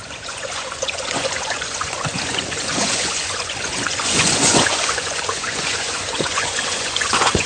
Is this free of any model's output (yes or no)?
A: no